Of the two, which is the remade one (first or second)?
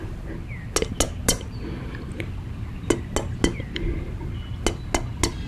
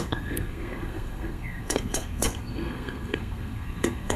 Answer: second